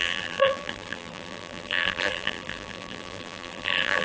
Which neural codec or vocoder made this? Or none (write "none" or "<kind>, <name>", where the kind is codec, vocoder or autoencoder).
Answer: vocoder, BigVGAN v2